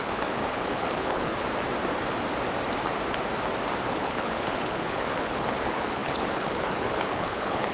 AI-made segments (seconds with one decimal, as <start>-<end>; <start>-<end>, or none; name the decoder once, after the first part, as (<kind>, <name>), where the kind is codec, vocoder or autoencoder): 0.0-1.3 (codec, HILCodec); 3.9-7.7